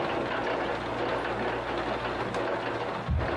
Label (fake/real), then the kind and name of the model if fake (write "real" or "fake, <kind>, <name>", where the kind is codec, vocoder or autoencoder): real